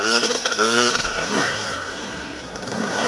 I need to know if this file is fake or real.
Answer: fake